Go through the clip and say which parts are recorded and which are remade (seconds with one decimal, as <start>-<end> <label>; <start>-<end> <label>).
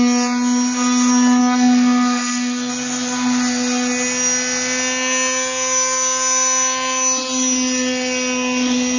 0.0-1.4 recorded; 1.4-2.7 remade; 2.7-9.0 recorded